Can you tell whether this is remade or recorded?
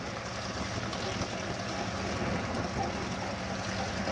recorded